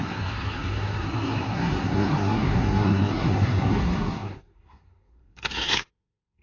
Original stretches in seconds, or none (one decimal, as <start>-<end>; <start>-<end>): none